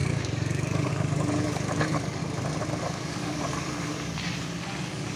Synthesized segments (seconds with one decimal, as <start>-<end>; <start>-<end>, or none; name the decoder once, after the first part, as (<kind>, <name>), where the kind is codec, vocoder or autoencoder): 0.0-2.2 (codec, DAC); 2.8-5.2